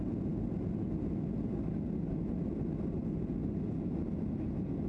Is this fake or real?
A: real